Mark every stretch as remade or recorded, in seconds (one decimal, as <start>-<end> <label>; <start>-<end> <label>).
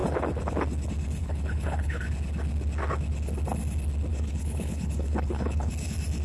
0.0-1.2 recorded; 1.2-2.0 remade; 2.0-4.1 recorded; 4.1-5.7 remade; 5.7-6.2 recorded